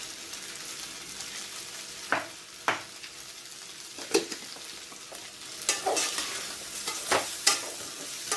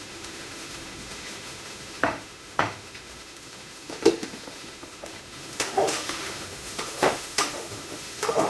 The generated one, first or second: second